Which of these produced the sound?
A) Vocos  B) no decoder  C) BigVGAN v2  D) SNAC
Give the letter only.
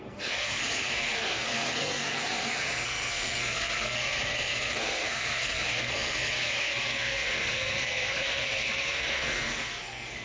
D